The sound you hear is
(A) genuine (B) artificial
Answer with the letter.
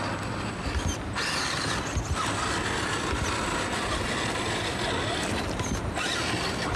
A